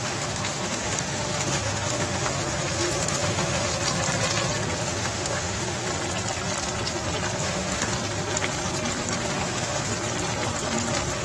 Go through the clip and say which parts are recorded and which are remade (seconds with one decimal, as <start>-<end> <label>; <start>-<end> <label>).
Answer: 0.0-3.7 remade; 3.7-4.9 recorded; 4.9-5.9 remade; 5.9-7.4 recorded; 7.4-7.9 remade; 7.9-9.2 recorded; 9.2-9.9 remade; 9.9-11.2 recorded

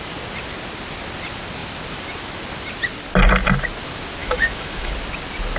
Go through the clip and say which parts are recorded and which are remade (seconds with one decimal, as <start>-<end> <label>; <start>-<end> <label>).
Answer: 0.0-4.2 recorded; 4.2-4.9 remade; 4.9-5.6 recorded